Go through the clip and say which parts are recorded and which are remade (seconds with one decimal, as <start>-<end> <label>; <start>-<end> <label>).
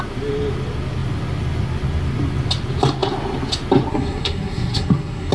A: 0.0-3.9 recorded; 3.9-5.3 remade